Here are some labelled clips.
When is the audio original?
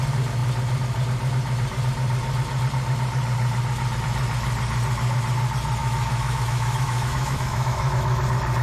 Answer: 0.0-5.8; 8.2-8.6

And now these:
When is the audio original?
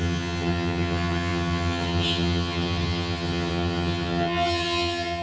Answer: none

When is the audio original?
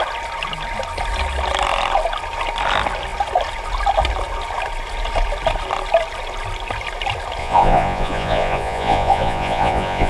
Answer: 0.0-7.4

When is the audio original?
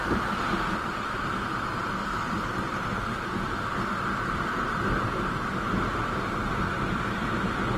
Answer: 0.0-7.8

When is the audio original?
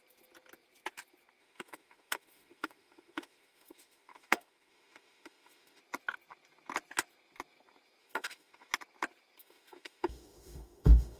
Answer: 0.0-1.4; 5.8-8.0; 8.7-9.4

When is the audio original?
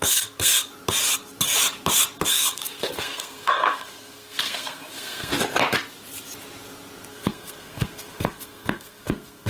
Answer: 0.7-2.3; 5.3-7.1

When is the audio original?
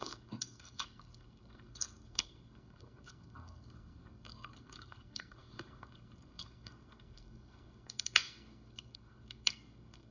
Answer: none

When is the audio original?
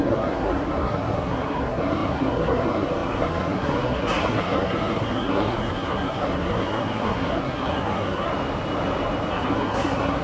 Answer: 8.3-9.3